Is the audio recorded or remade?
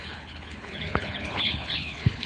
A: remade